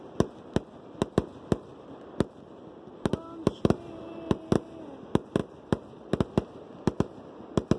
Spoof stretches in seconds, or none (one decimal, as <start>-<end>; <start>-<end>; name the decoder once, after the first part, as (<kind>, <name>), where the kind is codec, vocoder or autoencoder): none